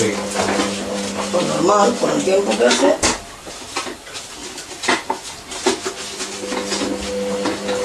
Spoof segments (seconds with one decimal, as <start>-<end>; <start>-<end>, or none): none